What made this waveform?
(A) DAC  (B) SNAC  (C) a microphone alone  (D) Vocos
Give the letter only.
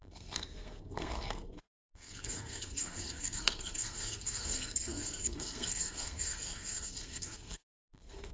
B